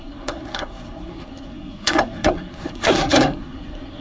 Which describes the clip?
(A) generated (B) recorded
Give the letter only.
A